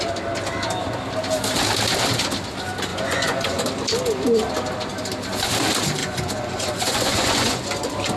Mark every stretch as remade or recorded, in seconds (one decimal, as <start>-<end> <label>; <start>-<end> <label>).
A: 0.0-2.9 recorded; 2.9-3.6 remade; 3.6-6.0 recorded; 6.0-7.7 remade; 7.7-8.2 recorded